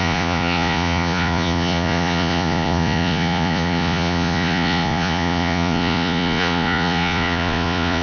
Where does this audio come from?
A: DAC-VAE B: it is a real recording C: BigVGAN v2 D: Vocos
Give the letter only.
D